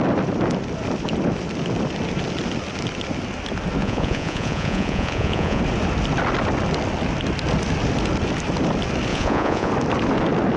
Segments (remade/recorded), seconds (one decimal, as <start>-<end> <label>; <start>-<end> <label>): 0.0-3.8 recorded; 3.8-5.6 remade; 5.6-9.1 recorded; 9.1-9.7 remade; 9.7-10.6 recorded